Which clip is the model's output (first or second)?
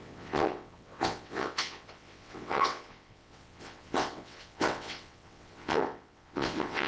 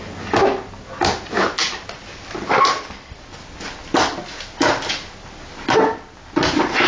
first